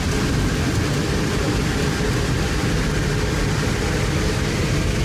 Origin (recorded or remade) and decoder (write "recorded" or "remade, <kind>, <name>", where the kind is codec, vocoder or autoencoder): recorded